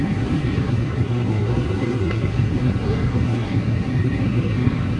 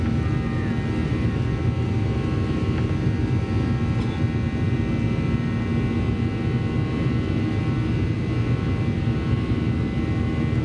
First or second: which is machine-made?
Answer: first